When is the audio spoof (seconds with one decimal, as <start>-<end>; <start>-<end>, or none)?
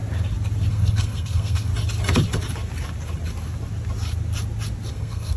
0.7-1.7; 4.9-5.4